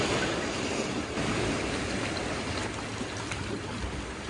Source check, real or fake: real